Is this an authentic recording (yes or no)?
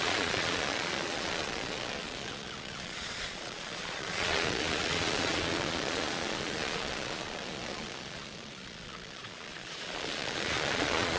no